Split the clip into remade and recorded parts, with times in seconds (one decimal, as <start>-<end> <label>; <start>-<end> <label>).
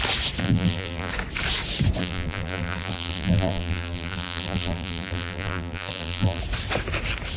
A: 0.0-0.4 recorded; 0.4-1.1 remade; 1.1-2.0 recorded; 2.0-6.4 remade; 6.4-7.4 recorded